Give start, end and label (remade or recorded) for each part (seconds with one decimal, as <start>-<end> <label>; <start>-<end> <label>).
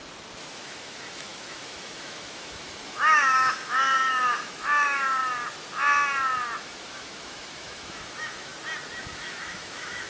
0.0-0.6 recorded; 0.6-5.2 remade; 5.2-6.6 recorded; 6.6-8.5 remade; 8.5-9.0 recorded; 9.0-10.1 remade